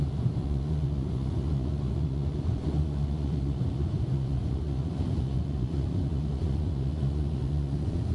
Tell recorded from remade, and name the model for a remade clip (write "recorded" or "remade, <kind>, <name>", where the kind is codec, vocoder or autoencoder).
remade, vocoder, Vocos